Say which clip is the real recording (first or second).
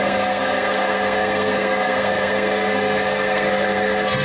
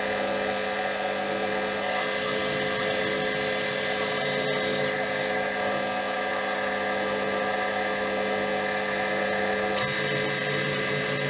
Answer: second